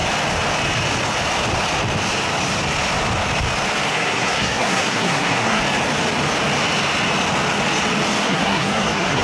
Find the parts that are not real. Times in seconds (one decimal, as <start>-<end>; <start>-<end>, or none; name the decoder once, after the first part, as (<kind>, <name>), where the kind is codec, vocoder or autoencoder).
3.9-5.6 (codec, SNAC); 8.2-9.2